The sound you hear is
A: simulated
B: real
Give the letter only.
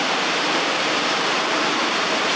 B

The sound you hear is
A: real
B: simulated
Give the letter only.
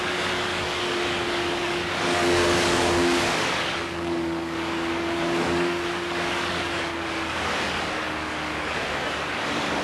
B